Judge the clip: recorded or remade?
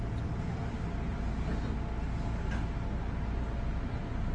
recorded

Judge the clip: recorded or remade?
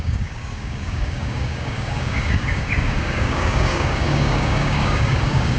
remade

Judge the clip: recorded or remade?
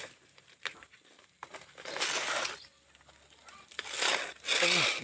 recorded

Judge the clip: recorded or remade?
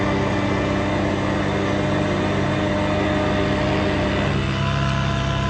recorded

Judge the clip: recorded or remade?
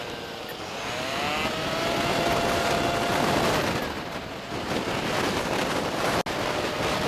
recorded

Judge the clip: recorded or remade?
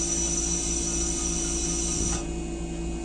recorded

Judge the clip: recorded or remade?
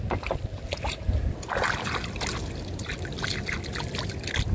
recorded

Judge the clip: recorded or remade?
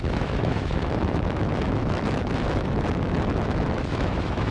remade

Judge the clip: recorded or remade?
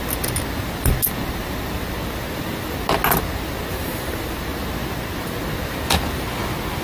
recorded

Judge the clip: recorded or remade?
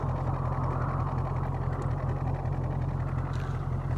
recorded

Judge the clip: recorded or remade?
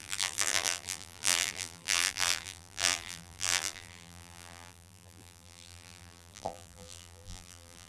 remade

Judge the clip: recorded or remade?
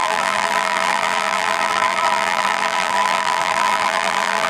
remade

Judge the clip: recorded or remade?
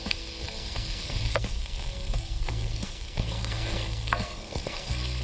remade